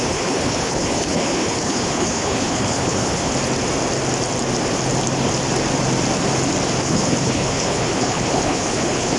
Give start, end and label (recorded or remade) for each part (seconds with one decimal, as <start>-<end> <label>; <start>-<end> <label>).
0.0-3.3 remade; 3.3-6.8 recorded; 6.8-9.2 remade